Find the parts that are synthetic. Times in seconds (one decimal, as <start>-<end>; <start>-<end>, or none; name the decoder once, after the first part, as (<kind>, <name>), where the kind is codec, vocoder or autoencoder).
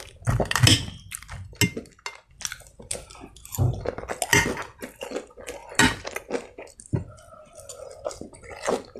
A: none